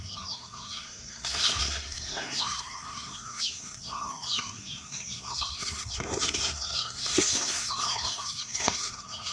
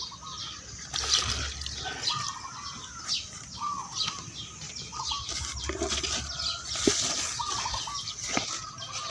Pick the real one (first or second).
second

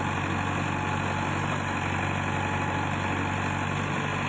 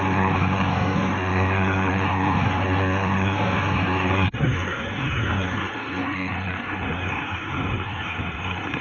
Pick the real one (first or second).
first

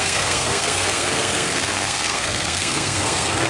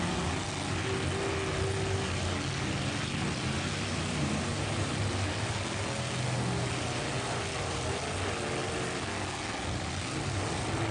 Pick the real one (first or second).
second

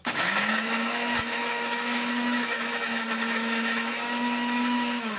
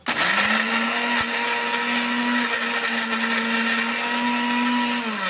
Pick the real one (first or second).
second